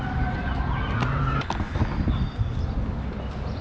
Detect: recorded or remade recorded